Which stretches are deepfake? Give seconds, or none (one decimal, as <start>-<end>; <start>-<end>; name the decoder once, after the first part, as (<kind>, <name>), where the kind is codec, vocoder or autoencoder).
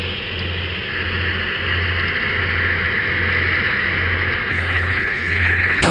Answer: 4.5-5.9 (codec, HILCodec)